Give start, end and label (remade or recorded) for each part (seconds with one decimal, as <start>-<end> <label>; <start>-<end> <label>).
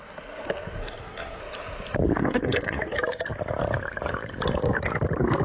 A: 0.0-0.8 recorded; 0.8-1.4 remade; 1.4-2.2 recorded; 2.2-2.8 remade; 2.8-5.4 recorded